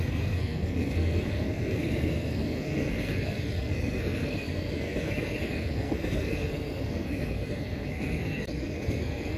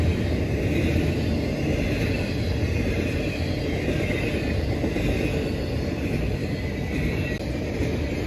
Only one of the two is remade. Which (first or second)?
first